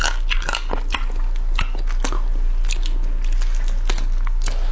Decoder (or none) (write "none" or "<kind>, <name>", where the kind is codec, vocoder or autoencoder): none